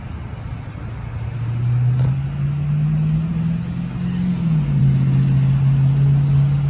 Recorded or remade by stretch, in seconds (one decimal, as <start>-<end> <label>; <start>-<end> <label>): 0.0-6.7 recorded